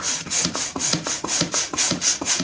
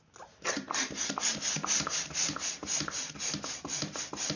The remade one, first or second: first